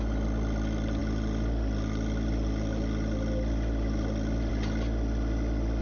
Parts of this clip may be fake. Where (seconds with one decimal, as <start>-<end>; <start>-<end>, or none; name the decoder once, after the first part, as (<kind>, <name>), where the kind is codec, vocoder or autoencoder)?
none